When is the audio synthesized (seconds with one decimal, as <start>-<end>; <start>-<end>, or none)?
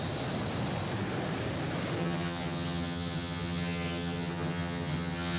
2.0-5.4